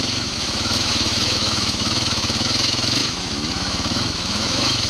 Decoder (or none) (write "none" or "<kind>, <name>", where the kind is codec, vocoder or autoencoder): autoencoder, DAC-VAE